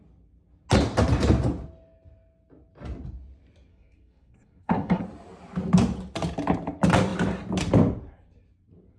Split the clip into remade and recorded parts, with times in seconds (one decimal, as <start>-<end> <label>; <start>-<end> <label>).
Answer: 0.0-3.7 recorded; 3.7-5.0 remade; 5.0-9.0 recorded